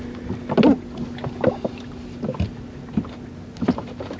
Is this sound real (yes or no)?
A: yes